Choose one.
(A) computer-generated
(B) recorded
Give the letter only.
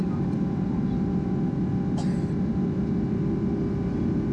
B